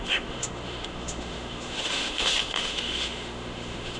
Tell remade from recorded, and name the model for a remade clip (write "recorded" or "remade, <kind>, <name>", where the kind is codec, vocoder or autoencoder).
remade, autoencoder, DAC-VAE